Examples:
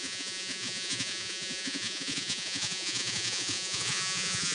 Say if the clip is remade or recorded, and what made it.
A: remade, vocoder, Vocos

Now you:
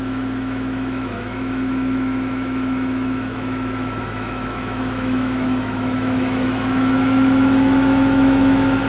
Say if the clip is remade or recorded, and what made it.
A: remade, autoencoder, DAC-VAE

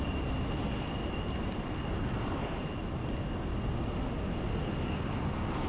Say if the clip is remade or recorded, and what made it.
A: recorded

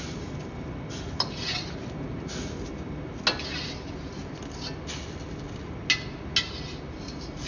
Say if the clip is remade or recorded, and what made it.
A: recorded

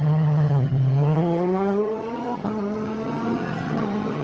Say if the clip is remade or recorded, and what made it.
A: remade, vocoder, HiFi-GAN